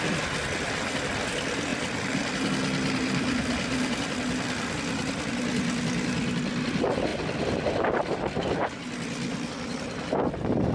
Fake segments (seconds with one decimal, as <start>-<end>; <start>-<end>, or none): none